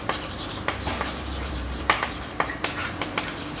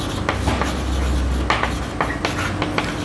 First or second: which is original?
second